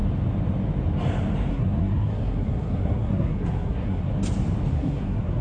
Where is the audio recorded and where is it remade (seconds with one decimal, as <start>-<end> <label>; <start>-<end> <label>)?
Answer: 0.0-1.5 recorded; 1.5-4.1 remade; 4.1-4.7 recorded; 4.7-5.4 remade